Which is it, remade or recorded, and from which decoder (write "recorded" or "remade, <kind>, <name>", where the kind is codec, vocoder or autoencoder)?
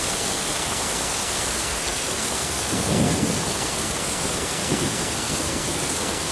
remade, codec, SNAC